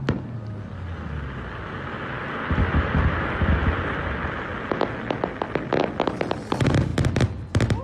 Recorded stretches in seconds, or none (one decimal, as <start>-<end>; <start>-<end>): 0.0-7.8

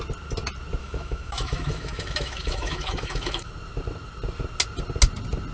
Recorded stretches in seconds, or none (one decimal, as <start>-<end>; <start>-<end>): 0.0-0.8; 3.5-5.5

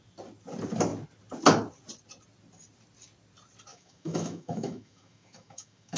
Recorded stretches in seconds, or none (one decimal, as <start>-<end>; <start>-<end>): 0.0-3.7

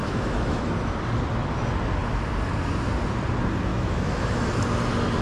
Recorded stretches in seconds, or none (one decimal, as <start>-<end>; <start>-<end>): 0.7-3.7; 4.5-5.2